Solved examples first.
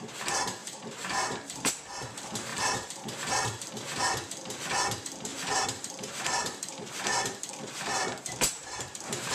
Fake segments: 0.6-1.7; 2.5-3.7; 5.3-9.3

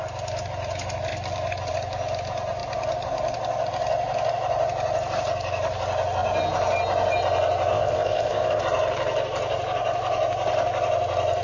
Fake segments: 7.7-8.6